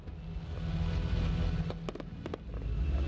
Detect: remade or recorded recorded